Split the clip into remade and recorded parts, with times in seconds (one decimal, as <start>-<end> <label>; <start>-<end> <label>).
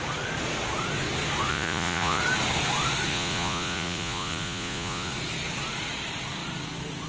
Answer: 0.0-1.5 recorded; 1.5-2.2 remade; 2.2-3.1 recorded; 3.1-5.1 remade; 5.1-7.1 recorded